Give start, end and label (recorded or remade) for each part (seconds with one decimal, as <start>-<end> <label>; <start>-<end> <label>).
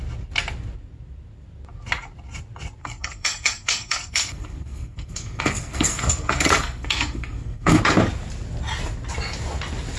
0.0-2.8 recorded; 2.8-7.8 remade; 7.8-10.0 recorded